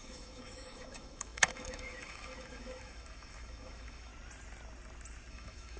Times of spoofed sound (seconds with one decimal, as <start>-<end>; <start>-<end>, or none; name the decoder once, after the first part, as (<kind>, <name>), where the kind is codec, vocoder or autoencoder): 0.0-4.1 (autoencoder, DAC-VAE); 5.3-5.8